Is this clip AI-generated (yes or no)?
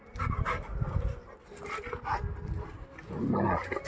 no